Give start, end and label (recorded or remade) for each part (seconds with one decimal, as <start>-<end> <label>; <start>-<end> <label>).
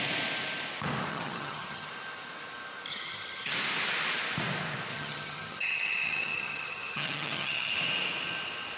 0.0-1.1 recorded; 1.1-1.9 remade; 1.9-2.9 recorded; 2.9-3.5 remade; 3.5-4.9 recorded; 4.9-7.7 remade; 7.7-8.8 recorded